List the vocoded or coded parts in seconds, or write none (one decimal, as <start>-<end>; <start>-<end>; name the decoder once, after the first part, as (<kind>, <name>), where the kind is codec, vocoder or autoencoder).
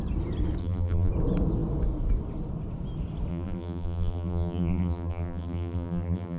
0.6-1.1 (vocoder, BigVGAN v2); 3.3-6.4